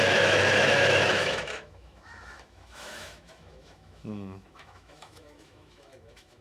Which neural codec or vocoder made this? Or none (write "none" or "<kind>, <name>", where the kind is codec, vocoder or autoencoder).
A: autoencoder, DAC-VAE